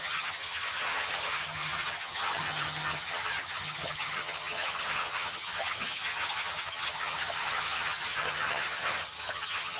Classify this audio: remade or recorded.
remade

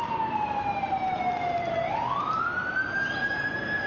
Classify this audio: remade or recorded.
recorded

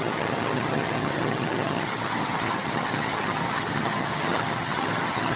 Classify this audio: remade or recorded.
remade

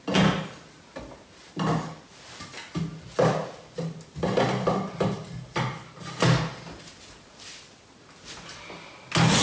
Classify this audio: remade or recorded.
recorded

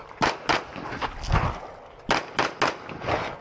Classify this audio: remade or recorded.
recorded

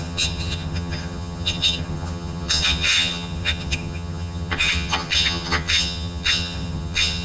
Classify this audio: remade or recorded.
remade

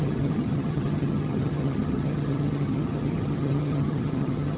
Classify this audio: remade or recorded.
remade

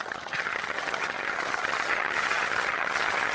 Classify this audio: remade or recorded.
remade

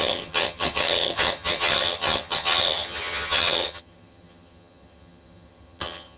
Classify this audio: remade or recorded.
remade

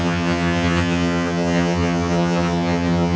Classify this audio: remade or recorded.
remade